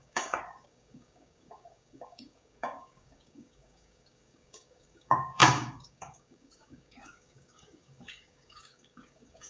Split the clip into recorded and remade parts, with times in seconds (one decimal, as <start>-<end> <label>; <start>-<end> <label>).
0.0-9.5 remade